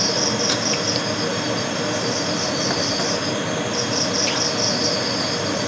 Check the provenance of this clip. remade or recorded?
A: recorded